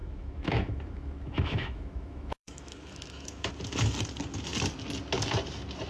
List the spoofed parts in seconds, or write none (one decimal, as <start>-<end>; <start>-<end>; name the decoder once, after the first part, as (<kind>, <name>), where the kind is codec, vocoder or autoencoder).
0.0-3.5 (autoencoder, DAC-VAE)